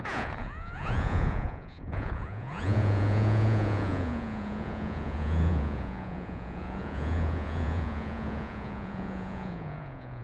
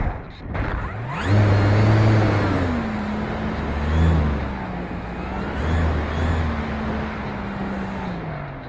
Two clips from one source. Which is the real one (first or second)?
second